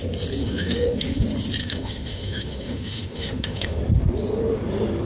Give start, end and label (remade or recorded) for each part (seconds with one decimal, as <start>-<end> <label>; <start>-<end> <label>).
0.0-0.4 recorded; 0.4-1.2 remade; 1.2-1.6 recorded; 1.6-3.8 remade; 3.8-5.1 recorded